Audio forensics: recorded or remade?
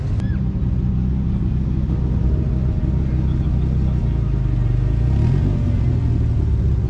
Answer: recorded